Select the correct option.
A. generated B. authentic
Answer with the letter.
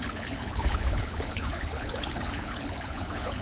A